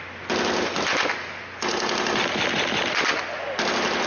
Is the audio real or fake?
real